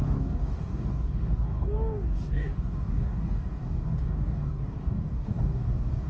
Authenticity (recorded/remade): remade